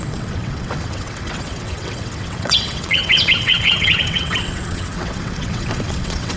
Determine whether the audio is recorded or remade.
remade